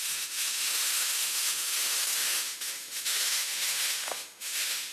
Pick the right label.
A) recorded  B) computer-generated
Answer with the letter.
B